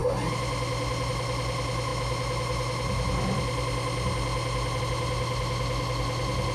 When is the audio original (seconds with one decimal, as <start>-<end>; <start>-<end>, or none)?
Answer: 0.0-6.5